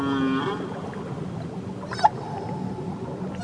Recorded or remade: recorded